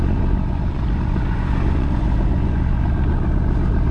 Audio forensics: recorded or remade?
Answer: remade